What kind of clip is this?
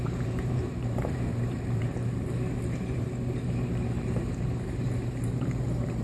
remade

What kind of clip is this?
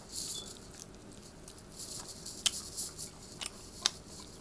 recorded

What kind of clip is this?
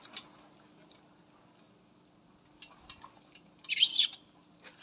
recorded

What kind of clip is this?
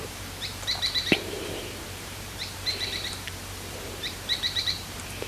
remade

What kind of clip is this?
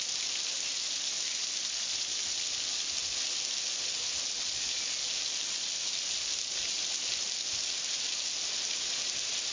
recorded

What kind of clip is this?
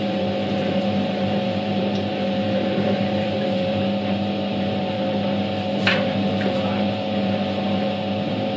remade